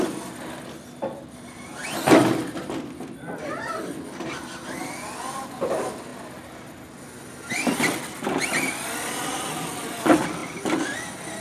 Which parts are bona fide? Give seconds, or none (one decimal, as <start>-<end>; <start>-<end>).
0.0-11.4